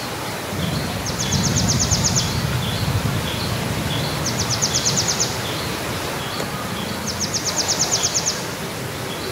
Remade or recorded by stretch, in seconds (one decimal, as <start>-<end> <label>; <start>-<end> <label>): 0.0-9.3 recorded